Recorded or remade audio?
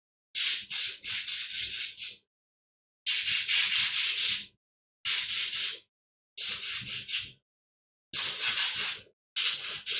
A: recorded